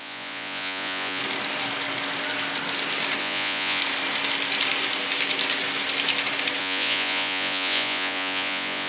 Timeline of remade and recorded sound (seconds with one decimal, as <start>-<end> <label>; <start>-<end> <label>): 0.0-1.2 remade; 1.2-3.2 recorded; 3.2-3.8 remade; 3.8-6.6 recorded; 6.6-8.9 remade